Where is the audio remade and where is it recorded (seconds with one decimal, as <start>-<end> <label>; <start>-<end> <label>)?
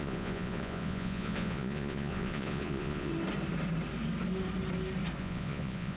0.0-3.1 remade; 3.1-5.2 recorded; 5.2-6.0 remade